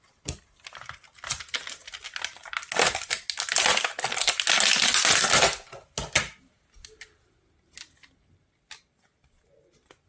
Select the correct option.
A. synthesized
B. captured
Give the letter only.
B